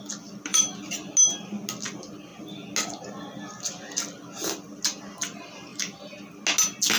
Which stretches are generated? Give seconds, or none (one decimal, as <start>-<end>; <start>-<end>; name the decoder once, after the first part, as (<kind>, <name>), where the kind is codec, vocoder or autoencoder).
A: 0.5-1.1 (vocoder, BigVGAN v2); 5.7-6.3